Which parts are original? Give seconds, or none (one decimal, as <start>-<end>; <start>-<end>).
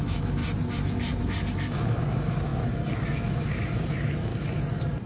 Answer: 0.4-1.5; 4.3-5.1